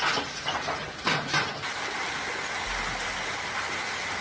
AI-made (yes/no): no